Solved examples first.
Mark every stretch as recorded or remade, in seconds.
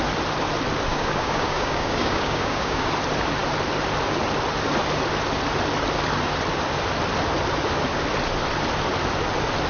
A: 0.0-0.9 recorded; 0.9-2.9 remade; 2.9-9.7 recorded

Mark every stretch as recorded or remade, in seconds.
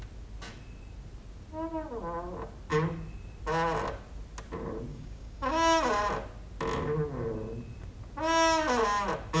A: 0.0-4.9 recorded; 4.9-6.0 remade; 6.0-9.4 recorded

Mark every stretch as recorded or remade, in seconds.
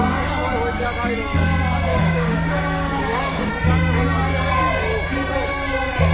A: 0.0-1.9 recorded; 1.9-3.5 remade; 3.5-6.1 recorded